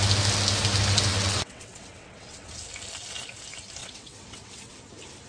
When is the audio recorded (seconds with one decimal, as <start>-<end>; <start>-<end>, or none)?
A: 0.0-1.1; 2.5-3.8; 4.8-5.3